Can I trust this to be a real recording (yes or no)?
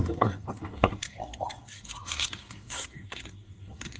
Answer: no